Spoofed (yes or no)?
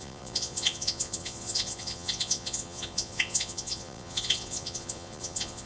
yes